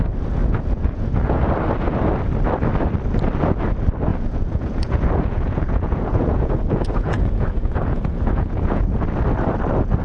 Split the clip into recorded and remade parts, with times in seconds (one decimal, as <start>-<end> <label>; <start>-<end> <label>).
0.0-0.4 recorded; 0.4-1.4 remade; 1.4-4.1 recorded; 4.1-9.0 remade; 9.0-10.0 recorded